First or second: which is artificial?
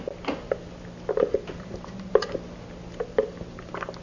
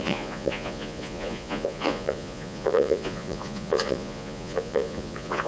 second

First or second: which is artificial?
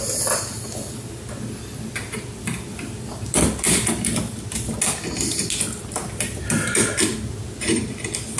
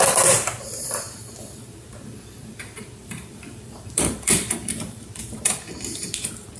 second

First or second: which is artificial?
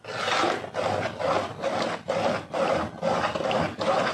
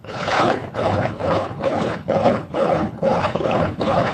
second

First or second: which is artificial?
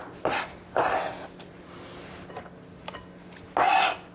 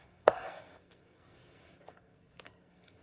second